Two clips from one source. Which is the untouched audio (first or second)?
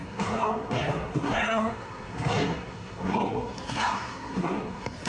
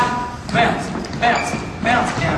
second